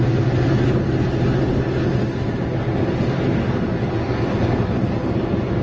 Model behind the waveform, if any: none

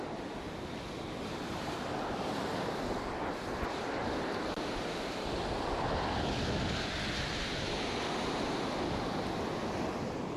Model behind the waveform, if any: none